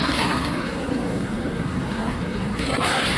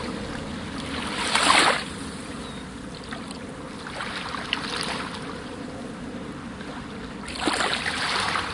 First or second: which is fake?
first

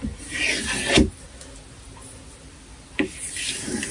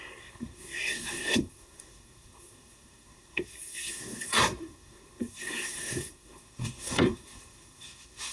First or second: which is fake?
second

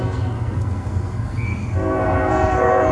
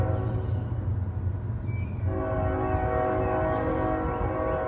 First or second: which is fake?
first